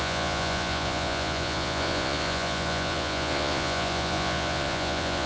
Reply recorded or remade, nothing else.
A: remade